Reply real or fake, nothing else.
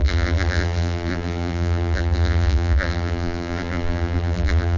fake